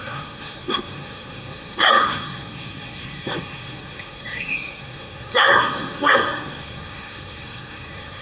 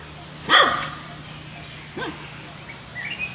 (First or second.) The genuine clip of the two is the second